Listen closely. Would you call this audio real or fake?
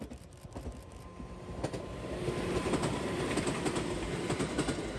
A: real